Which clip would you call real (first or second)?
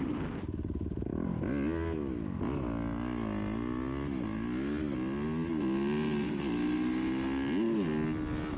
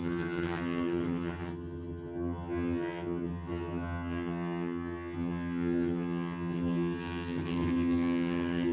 first